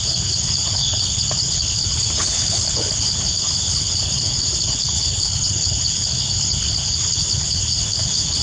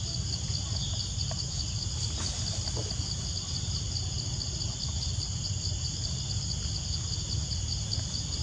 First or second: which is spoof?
first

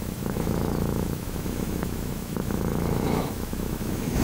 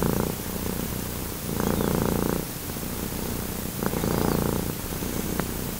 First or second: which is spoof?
first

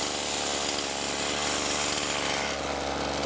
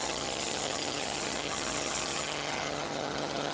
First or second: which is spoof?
second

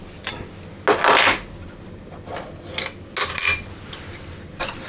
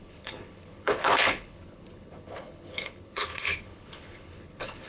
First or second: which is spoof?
second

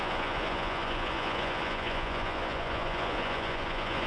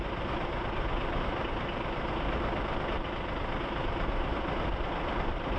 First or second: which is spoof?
first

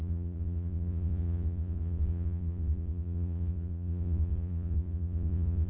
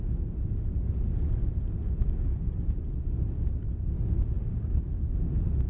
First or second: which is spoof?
first